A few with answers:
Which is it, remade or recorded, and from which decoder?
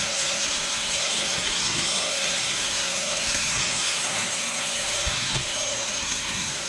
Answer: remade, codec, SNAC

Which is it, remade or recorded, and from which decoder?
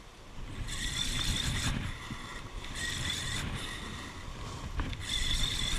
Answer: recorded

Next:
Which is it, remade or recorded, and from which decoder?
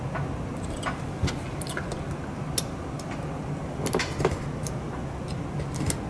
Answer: recorded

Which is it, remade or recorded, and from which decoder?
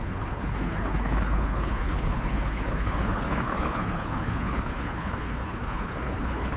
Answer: remade, codec, HILCodec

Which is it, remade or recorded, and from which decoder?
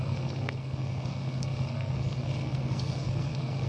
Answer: remade, codec, SNAC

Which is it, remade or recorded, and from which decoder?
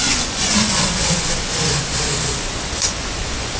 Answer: remade, vocoder, Vocos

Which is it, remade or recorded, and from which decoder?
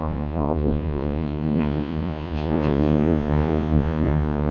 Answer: remade, vocoder, Vocos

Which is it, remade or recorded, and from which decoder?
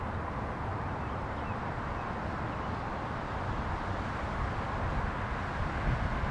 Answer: recorded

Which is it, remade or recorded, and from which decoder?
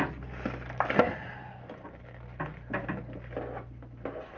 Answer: recorded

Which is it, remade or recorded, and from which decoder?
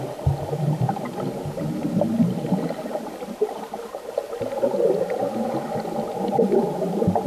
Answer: recorded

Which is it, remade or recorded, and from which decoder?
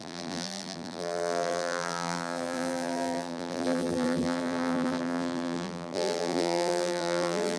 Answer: remade, vocoder, BigVGAN v2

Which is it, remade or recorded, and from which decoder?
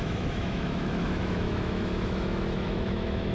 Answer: remade, autoencoder, DAC-VAE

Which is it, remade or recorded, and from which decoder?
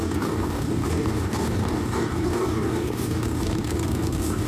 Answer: remade, codec, DAC